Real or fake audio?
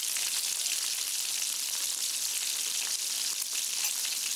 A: real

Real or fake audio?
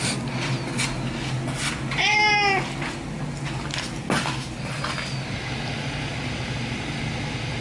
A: real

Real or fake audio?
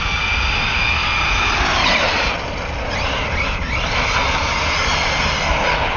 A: real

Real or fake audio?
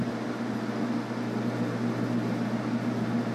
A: real